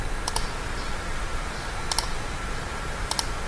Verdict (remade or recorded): recorded